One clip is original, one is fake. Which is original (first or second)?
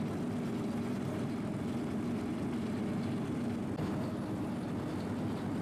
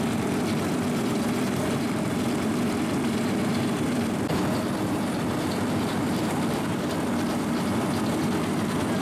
first